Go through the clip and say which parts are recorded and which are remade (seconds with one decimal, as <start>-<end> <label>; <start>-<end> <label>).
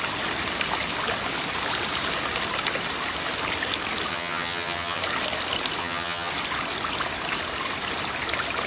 0.0-4.1 recorded; 4.1-5.0 remade; 5.0-5.8 recorded; 5.8-6.3 remade; 6.3-8.7 recorded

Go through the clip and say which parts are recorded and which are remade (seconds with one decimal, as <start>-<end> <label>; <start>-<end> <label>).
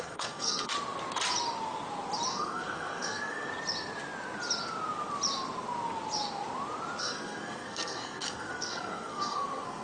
0.0-0.7 remade; 0.7-2.3 recorded; 2.3-3.5 remade; 3.5-7.0 recorded; 7.0-9.8 remade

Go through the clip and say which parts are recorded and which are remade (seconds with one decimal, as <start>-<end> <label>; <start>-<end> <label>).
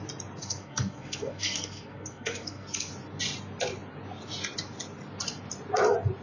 0.0-0.4 recorded; 0.4-2.9 remade; 2.9-6.2 recorded